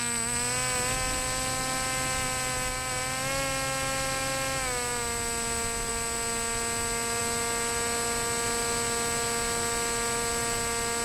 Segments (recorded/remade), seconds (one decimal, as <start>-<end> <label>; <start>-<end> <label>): 0.0-11.0 recorded